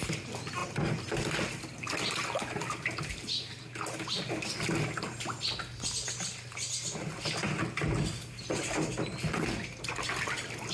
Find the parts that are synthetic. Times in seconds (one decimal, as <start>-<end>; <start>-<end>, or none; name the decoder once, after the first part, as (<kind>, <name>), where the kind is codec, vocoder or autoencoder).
none